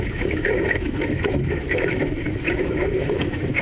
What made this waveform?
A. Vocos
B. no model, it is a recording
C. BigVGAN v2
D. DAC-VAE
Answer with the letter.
D